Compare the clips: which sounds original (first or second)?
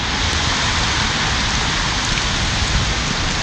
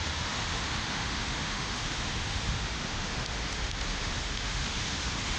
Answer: first